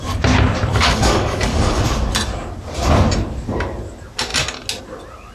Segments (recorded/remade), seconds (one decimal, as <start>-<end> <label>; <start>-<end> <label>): 0.0-0.7 recorded; 0.7-1.8 remade; 1.8-5.3 recorded